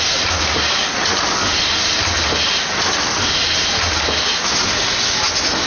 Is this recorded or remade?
recorded